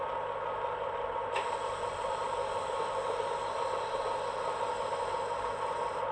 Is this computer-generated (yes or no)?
no